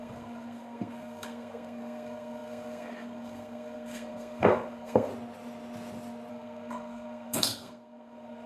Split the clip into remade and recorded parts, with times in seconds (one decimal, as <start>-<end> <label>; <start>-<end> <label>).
0.0-5.1 remade; 5.1-6.3 recorded; 6.3-8.5 remade